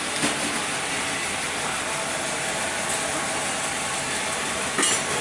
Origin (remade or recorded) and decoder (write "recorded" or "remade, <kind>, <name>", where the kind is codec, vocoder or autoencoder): recorded